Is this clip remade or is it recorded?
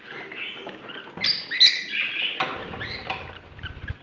recorded